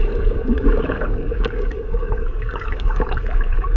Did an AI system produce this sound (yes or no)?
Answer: yes